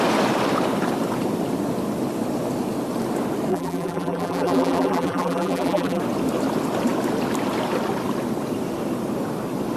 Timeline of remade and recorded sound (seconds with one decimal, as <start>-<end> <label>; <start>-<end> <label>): 0.0-3.5 recorded; 3.5-6.0 remade; 6.0-9.8 recorded